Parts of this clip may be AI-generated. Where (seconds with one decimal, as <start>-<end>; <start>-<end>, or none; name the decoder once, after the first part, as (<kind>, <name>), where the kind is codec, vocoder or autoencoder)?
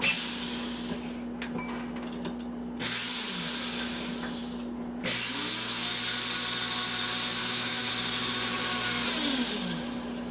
7.4-7.9 (autoencoder, DAC-VAE)